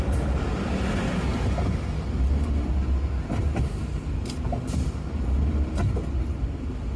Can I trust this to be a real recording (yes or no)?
yes